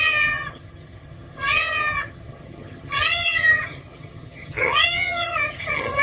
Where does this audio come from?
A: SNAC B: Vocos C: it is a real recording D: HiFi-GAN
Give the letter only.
D